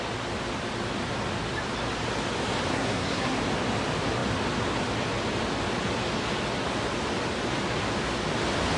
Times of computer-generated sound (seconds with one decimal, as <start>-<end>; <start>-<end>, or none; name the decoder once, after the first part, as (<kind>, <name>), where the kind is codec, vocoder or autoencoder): 2.7-3.4 (codec, SNAC)